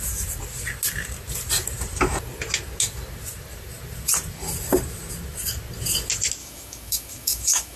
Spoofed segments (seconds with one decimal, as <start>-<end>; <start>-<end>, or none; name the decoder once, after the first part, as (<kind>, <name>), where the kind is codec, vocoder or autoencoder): 6.4-7.8 (autoencoder, DAC-VAE)